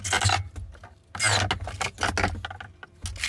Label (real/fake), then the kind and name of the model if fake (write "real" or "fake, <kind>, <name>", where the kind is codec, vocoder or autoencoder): real